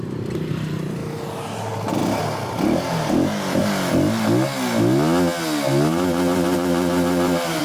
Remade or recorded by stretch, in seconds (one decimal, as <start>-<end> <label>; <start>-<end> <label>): 0.0-5.9 recorded; 5.9-7.6 remade